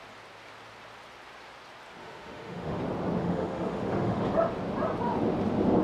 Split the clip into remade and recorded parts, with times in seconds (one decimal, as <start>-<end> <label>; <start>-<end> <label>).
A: 0.0-2.0 recorded; 2.0-2.8 remade; 2.8-3.2 recorded; 3.2-4.3 remade; 4.3-5.8 recorded